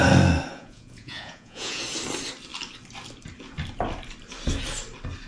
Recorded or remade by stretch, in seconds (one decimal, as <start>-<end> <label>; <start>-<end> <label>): 0.0-0.5 recorded; 0.5-1.8 remade; 1.8-5.3 recorded